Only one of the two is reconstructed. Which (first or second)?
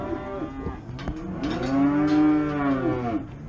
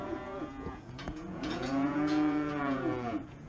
second